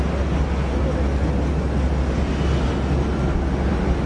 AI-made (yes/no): no